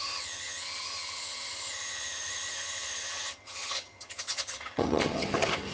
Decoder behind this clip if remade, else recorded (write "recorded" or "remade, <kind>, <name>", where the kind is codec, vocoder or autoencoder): remade, vocoder, HiFi-GAN